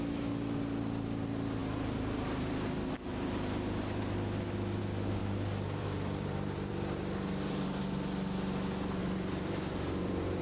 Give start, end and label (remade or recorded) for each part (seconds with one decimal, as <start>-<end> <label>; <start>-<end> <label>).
0.0-5.2 recorded; 5.2-7.8 remade; 7.8-9.0 recorded; 9.0-10.4 remade